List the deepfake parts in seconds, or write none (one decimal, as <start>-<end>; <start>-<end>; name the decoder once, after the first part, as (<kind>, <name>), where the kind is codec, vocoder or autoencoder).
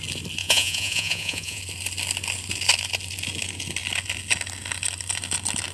0.4-1.6 (vocoder, Vocos)